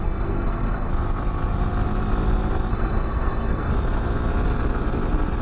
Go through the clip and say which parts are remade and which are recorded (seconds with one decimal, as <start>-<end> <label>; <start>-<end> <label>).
0.0-0.9 remade; 0.9-2.7 recorded; 2.7-3.7 remade; 3.7-5.4 recorded